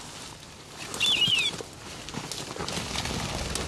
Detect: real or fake real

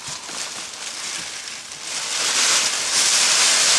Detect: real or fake real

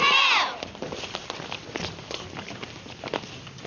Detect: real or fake real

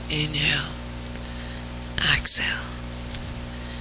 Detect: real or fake real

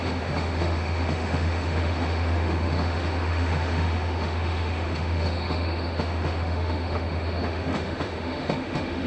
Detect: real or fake fake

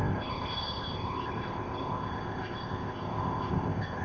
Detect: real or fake fake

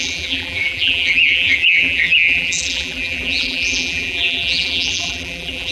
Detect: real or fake fake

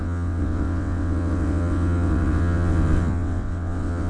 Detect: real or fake fake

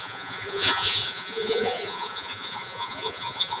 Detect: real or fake fake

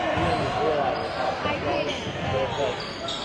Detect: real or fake real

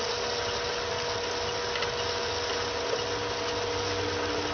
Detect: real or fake real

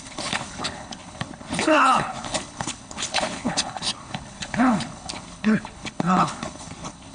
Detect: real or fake fake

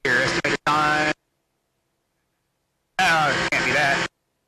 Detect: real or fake real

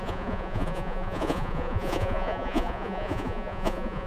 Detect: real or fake fake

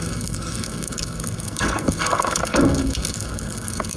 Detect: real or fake fake